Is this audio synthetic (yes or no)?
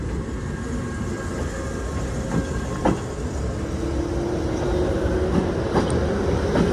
no